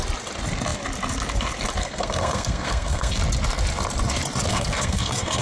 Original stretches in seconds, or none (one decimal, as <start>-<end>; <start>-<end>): 0.0-1.8; 3.1-4.5